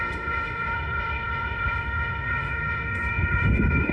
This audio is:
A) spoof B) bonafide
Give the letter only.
A